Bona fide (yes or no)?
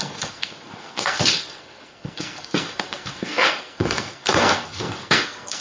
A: no